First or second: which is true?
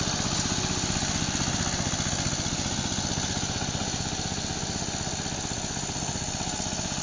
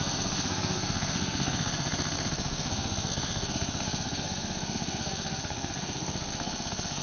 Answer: first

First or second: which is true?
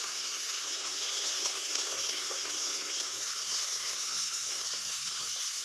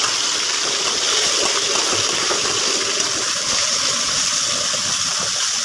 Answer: second